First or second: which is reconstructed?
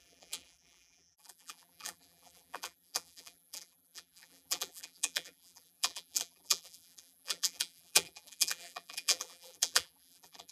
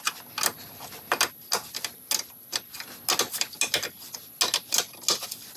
first